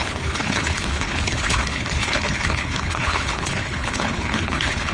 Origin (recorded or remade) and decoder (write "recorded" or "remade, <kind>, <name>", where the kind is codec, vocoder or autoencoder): remade, codec, HILCodec